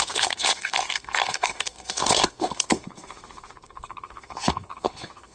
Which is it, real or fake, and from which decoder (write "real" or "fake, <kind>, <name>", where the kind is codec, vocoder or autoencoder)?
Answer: fake, codec, SNAC